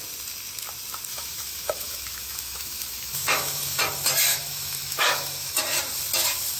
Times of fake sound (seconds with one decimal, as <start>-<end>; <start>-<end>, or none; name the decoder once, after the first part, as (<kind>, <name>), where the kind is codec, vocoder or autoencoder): 1.1-3.8 (autoencoder, DAC-VAE); 4.3-5.6